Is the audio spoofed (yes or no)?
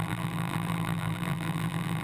yes